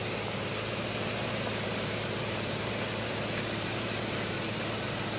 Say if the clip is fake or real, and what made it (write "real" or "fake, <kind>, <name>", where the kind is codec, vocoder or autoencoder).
fake, vocoder, BigVGAN v2